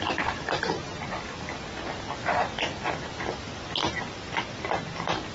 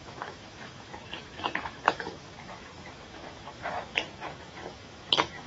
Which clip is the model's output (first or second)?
second